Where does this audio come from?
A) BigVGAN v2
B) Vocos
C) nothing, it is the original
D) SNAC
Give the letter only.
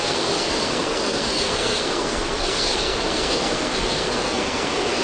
D